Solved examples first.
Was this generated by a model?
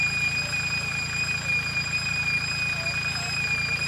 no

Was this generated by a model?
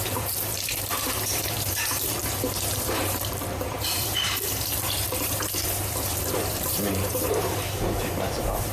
yes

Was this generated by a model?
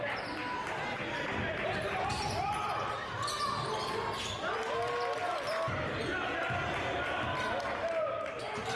no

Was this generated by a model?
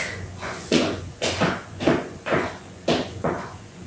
yes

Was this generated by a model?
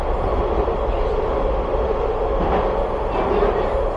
no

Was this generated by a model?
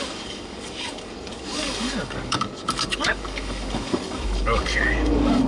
yes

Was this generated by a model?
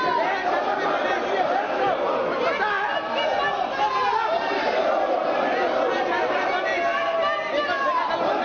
no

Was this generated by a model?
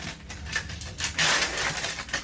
no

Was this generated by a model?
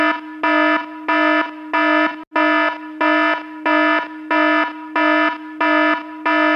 no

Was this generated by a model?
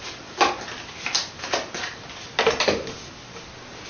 no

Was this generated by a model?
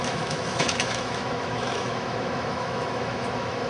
yes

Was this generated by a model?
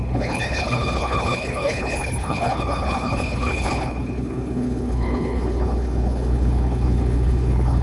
yes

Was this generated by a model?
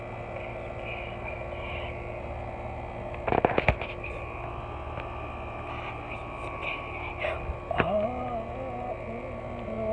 no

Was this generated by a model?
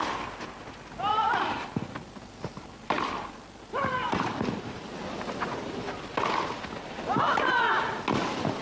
no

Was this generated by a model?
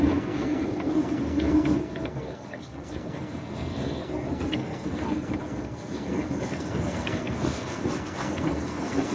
yes